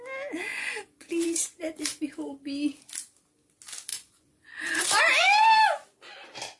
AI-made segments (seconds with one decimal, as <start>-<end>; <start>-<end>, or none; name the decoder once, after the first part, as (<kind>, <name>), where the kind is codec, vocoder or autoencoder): 0.5-2.0 (vocoder, Vocos); 3.9-5.0